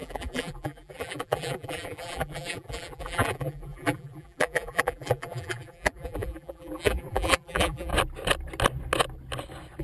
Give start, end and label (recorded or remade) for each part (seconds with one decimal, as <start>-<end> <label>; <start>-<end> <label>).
0.0-7.9 remade; 7.9-9.8 recorded